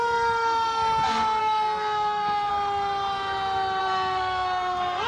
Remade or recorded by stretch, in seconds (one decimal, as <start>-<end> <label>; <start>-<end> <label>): 0.0-1.4 recorded; 1.4-2.5 remade; 2.5-3.8 recorded; 3.8-5.1 remade